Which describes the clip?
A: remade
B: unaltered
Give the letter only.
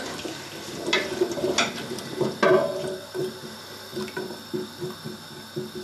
B